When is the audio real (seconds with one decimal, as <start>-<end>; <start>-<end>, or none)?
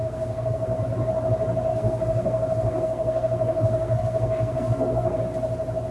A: 0.8-1.7; 5.2-5.9